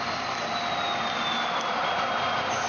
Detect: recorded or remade recorded